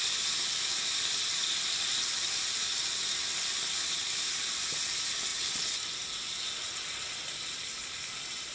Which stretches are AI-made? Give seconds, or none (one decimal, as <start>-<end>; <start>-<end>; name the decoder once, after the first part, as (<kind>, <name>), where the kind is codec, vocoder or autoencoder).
none